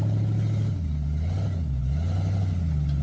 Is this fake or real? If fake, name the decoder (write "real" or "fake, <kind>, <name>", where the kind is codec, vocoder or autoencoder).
real